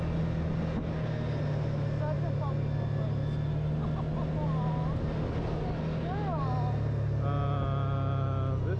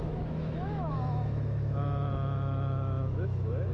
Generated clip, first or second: second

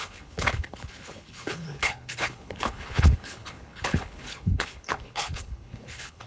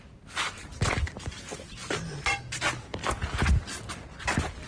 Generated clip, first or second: first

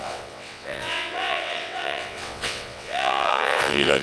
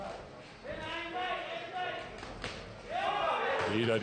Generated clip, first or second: first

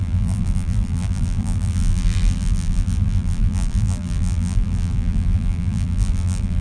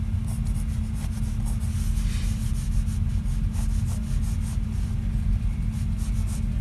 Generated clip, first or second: first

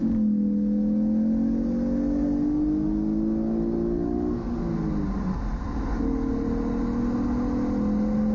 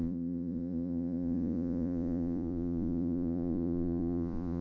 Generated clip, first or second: second